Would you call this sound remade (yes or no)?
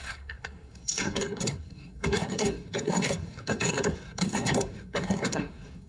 yes